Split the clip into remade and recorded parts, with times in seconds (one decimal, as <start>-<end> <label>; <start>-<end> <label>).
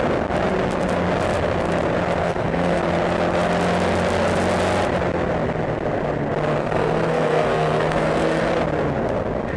0.0-2.2 recorded; 2.2-2.8 remade; 2.8-6.6 recorded; 6.6-8.5 remade; 8.5-9.6 recorded